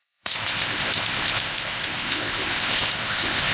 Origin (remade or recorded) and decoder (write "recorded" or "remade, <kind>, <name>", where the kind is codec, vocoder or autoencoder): remade, codec, ZipCodec